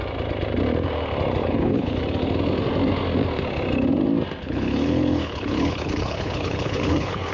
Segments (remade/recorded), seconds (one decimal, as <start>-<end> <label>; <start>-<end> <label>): 0.0-1.4 recorded; 1.4-2.0 remade; 2.0-4.4 recorded; 4.4-7.3 remade